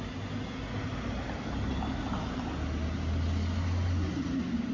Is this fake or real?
real